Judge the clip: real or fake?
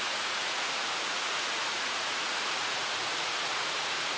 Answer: fake